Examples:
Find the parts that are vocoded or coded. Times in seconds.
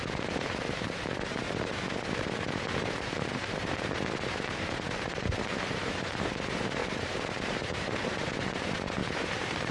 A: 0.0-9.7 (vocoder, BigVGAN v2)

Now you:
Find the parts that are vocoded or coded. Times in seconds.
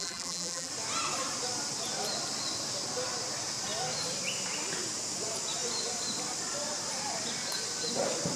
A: 0.0-0.7 (vocoder, BigVGAN v2)